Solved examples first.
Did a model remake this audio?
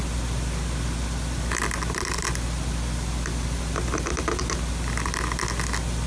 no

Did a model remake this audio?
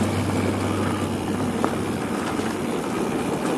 no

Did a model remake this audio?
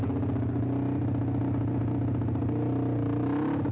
no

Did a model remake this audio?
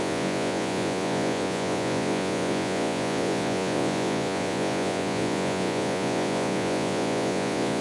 yes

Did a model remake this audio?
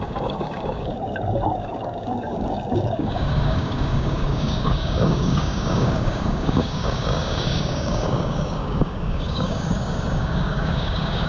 yes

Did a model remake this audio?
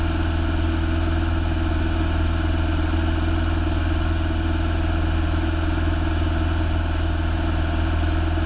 no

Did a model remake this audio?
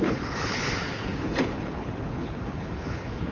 yes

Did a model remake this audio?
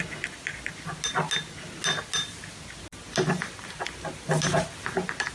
no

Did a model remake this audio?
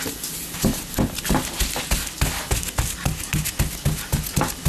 no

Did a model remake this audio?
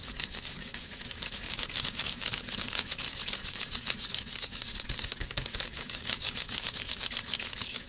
yes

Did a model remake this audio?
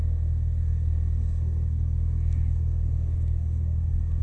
yes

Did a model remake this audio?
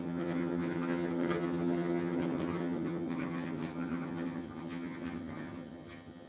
yes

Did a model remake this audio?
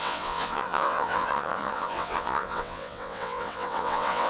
yes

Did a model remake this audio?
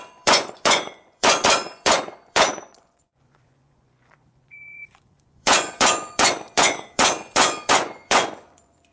yes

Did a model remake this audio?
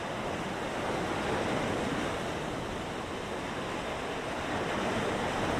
no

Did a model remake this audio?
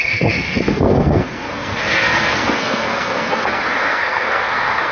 yes